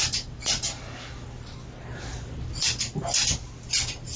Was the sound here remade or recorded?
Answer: recorded